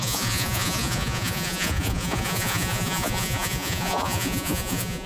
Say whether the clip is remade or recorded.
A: remade